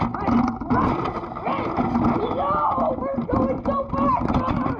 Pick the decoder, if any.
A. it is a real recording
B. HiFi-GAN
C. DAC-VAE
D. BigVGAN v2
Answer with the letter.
A